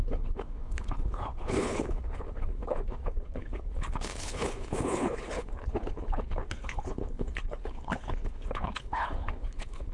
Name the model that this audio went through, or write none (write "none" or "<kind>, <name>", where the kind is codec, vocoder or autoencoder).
codec, HILCodec